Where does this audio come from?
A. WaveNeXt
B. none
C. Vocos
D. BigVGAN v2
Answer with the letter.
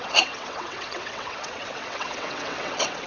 A